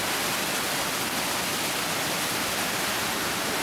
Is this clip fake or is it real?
real